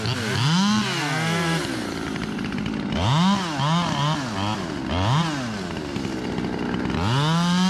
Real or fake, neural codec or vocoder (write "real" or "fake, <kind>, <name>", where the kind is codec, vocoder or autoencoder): real